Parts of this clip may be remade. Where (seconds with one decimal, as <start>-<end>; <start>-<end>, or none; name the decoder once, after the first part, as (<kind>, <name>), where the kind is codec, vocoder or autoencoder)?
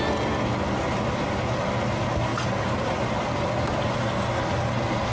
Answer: 2.3-3.5 (vocoder, BigVGAN v2)